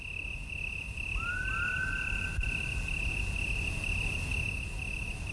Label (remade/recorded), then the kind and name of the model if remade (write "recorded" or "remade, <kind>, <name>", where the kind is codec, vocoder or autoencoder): recorded